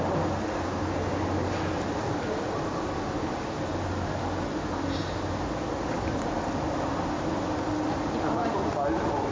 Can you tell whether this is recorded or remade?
recorded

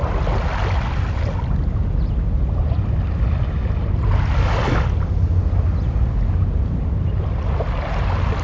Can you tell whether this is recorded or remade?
recorded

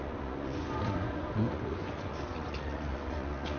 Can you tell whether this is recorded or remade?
remade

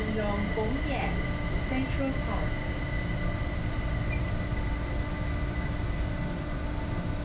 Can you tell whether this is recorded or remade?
recorded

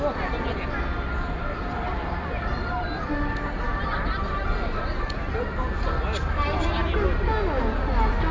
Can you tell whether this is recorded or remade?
recorded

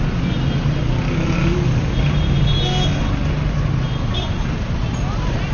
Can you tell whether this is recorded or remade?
recorded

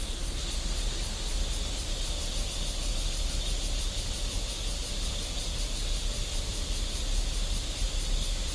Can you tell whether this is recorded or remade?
recorded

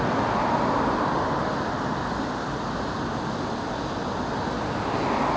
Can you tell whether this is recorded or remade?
recorded